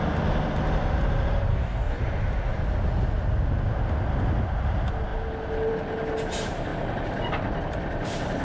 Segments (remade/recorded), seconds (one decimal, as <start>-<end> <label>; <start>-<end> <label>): 0.0-1.5 recorded; 1.5-2.0 remade; 2.0-8.4 recorded